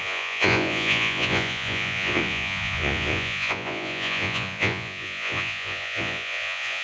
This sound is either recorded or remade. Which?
remade